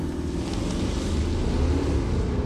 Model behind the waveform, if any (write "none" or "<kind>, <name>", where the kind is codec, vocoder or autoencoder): none